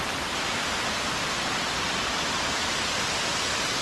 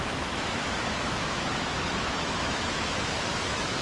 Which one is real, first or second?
first